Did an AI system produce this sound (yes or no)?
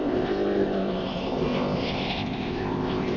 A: yes